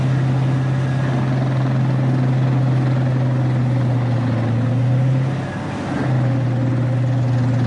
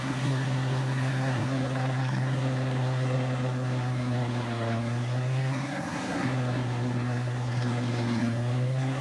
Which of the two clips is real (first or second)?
first